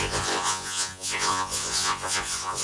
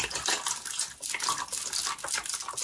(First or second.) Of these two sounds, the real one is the second